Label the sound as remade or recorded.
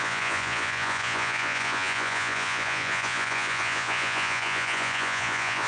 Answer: remade